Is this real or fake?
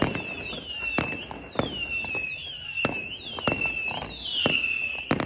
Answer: real